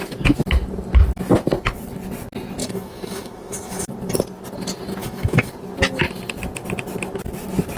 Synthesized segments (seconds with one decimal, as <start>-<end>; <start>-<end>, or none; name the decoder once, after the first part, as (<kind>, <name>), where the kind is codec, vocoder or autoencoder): 2.6-3.9 (autoencoder, DAC-VAE); 5.0-5.5